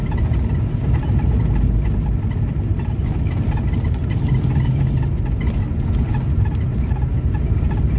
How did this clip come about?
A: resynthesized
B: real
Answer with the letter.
B